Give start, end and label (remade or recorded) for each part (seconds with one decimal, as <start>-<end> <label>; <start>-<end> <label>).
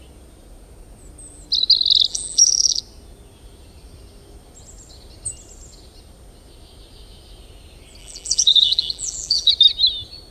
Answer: 0.0-2.1 recorded; 2.1-2.8 remade; 2.8-8.0 recorded; 8.0-9.5 remade; 9.5-10.3 recorded